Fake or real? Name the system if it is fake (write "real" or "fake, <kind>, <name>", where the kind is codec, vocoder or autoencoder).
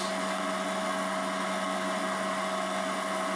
real